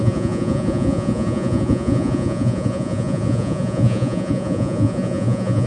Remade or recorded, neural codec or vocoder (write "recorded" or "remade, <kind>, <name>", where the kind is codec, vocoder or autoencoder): remade, vocoder, Vocos